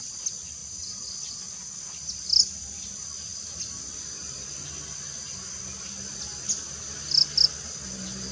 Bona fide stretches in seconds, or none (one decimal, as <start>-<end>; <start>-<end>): 0.0-8.3